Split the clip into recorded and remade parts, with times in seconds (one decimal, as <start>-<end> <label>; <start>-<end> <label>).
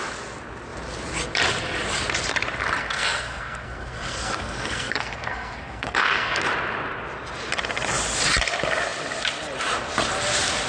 0.0-2.8 recorded; 2.8-6.4 remade; 6.4-10.7 recorded